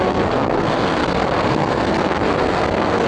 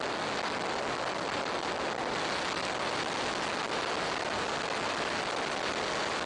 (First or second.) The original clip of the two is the second